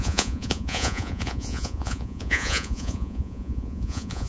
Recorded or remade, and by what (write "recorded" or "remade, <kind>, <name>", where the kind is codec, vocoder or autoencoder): remade, vocoder, Vocos